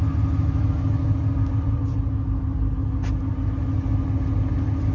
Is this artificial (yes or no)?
no